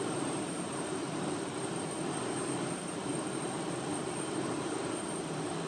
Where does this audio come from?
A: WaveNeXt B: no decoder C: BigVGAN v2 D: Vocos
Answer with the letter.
C